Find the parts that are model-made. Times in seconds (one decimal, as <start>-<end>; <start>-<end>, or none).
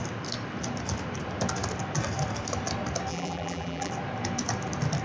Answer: 3.1-3.9